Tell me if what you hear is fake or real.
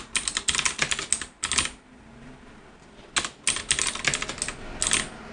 real